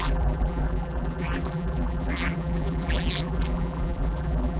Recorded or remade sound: remade